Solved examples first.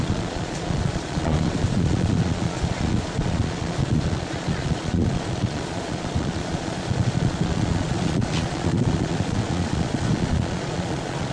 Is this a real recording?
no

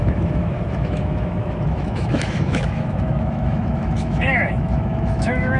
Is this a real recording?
no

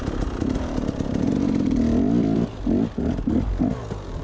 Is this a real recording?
yes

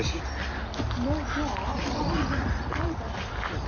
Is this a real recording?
yes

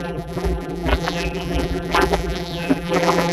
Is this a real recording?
no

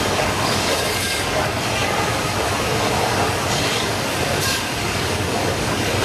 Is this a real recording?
no